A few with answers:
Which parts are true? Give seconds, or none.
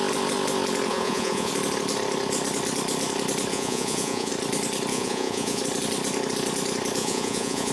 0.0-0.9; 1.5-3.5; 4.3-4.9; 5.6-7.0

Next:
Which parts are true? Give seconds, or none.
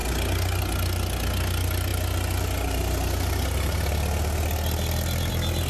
0.0-5.7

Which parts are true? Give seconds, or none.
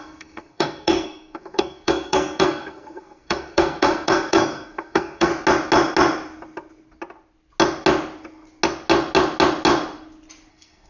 5.3-10.5